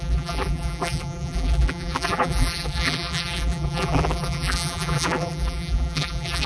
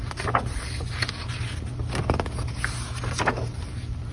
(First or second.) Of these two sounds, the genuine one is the second